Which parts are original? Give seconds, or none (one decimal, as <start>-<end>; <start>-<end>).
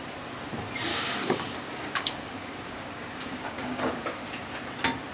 0.0-0.9; 4.0-5.1